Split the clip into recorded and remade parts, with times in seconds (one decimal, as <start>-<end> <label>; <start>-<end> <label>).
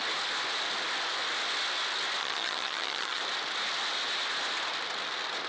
0.0-2.2 recorded; 2.2-3.2 remade; 3.2-5.5 recorded